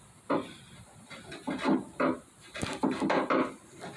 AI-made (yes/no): no